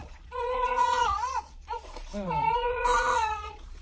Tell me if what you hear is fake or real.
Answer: fake